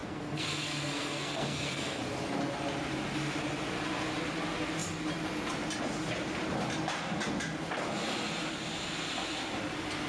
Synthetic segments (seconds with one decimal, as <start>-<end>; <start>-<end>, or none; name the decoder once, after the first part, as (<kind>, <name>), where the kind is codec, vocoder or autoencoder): 0.0-2.0 (codec, SNAC)